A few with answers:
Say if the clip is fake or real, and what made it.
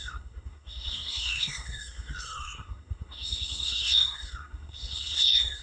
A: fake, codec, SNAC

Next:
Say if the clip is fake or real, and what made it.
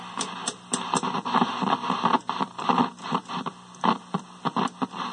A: real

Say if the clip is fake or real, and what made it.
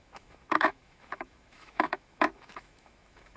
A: fake, autoencoder, DAC-VAE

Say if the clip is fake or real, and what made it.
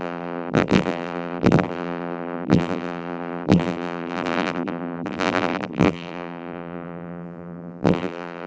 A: fake, vocoder, BigVGAN v2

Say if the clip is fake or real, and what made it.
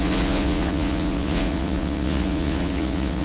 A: fake, vocoder, Vocos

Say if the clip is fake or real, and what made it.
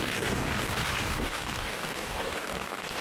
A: fake, codec, DAC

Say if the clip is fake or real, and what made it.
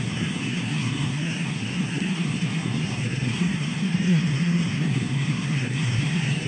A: fake, codec, SNAC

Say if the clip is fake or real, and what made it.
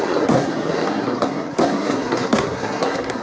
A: fake, codec, SNAC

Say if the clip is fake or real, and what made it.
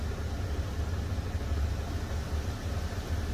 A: real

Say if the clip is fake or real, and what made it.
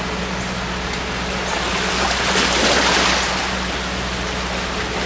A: real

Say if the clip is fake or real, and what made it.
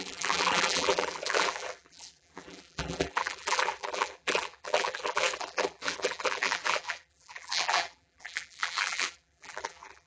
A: fake, vocoder, BigVGAN v2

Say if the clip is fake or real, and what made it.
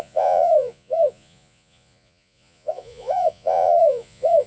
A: fake, vocoder, Vocos